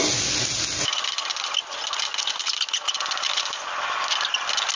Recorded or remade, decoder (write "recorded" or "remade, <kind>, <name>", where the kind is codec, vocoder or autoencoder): recorded